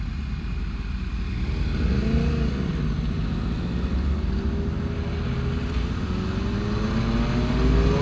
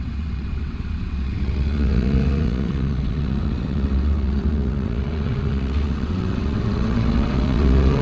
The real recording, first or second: first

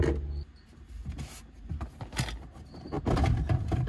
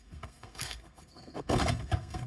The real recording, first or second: first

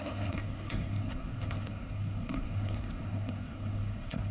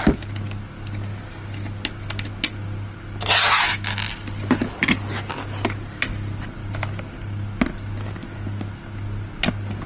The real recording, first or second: second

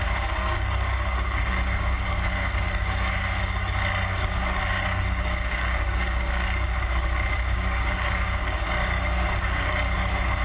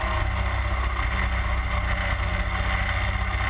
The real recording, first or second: second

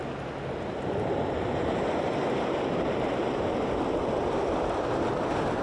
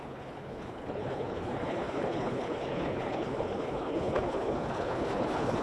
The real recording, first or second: first